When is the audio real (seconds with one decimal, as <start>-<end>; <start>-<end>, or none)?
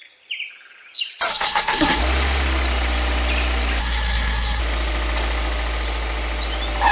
0.0-1.3; 2.0-3.8; 4.6-6.9